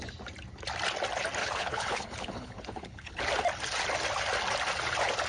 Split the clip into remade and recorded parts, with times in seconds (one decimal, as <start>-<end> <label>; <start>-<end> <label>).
0.0-1.4 recorded; 1.4-3.2 remade; 3.2-5.3 recorded